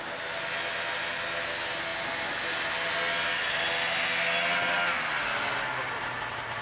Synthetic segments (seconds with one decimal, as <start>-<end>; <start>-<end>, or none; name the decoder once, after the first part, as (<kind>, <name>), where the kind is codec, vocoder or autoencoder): none